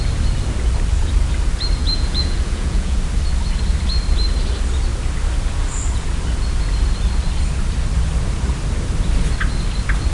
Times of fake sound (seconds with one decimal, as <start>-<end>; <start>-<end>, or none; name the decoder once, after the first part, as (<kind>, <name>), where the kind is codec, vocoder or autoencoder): 1.8-3.0 (vocoder, Vocos)